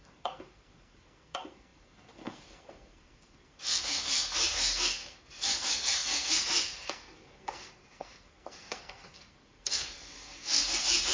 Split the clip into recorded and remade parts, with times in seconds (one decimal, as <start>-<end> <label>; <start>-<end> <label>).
0.0-11.1 remade